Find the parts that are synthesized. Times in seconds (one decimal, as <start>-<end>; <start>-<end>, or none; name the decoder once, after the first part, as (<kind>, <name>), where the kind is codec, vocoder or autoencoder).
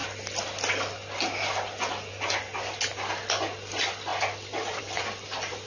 none